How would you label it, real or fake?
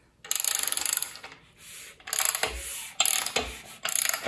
real